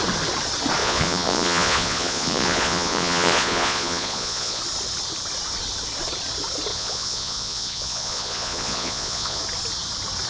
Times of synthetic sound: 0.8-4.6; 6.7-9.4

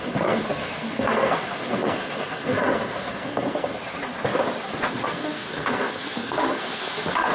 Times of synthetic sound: 0.0-3.7; 4.9-7.3

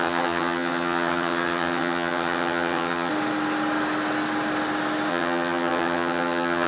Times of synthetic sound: 0.0-3.1; 5.1-6.7

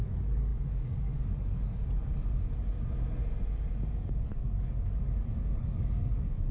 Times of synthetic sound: 0.0-1.7; 4.4-6.5

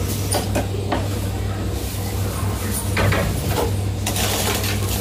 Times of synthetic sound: none

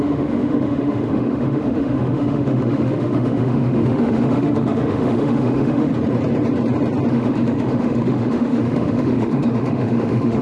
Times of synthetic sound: 0.0-5.9; 7.1-10.4